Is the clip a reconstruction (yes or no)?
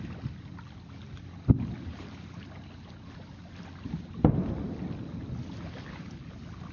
no